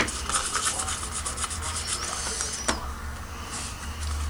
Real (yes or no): yes